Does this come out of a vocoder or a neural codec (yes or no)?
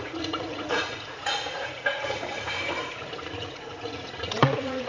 yes